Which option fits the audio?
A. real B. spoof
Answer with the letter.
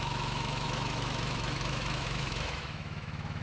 B